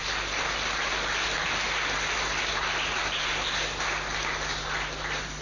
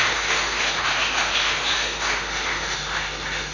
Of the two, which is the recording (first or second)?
first